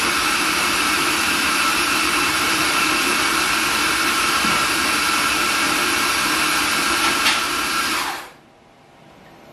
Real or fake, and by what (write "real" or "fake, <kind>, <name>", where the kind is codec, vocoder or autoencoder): fake, vocoder, BigVGAN v2